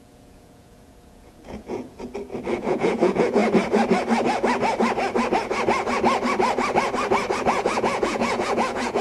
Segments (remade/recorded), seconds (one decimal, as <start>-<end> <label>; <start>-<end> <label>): 0.0-2.1 remade; 2.1-2.6 recorded; 2.6-3.4 remade; 3.4-7.4 recorded; 7.4-9.0 remade